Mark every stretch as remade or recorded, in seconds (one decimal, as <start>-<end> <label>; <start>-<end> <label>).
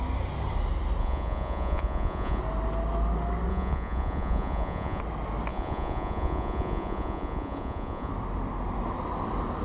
0.0-1.0 recorded; 1.0-2.4 remade; 2.4-3.5 recorded; 3.5-5.0 remade; 5.0-5.5 recorded; 5.5-8.1 remade; 8.1-9.6 recorded